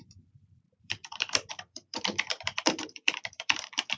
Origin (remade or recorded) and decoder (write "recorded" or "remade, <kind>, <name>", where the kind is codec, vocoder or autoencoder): remade, vocoder, BigVGAN v2